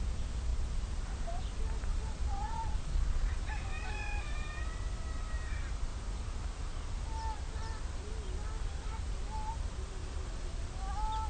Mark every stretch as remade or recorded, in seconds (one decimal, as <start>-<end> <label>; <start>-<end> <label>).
0.0-1.9 recorded; 1.9-3.4 remade; 3.4-11.3 recorded